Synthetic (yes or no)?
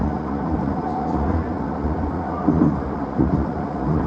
yes